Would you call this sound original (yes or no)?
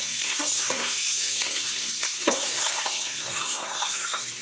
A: no